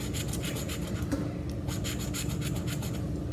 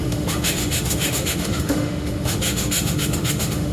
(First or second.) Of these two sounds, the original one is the first